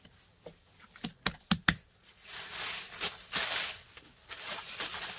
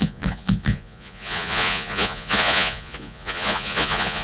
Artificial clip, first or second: second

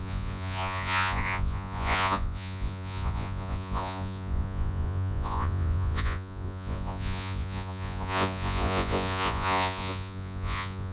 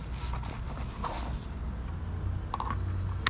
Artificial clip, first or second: first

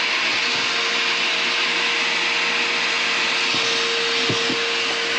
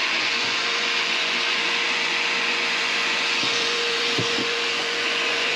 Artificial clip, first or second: second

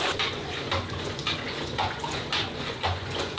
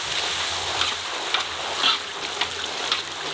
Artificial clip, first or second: first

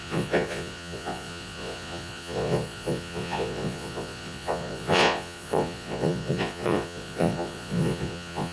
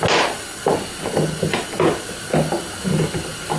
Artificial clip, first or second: first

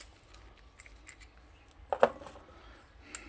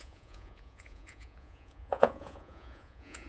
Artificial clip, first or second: second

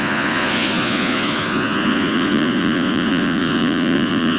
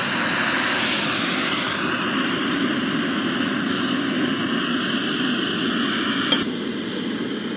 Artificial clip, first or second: first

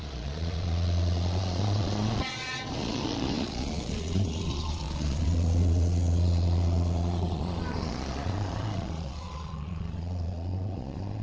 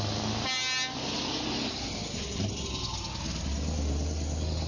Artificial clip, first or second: first